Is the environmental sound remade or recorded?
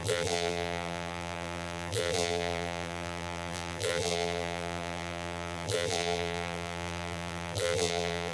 remade